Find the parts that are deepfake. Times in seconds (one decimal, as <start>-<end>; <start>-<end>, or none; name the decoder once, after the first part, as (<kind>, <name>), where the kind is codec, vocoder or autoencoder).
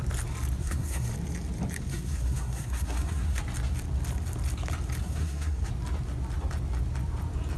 0.6-1.1 (codec, SNAC); 1.9-3.4; 5.0-5.7